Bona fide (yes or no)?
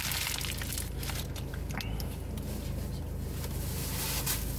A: yes